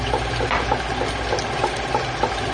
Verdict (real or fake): real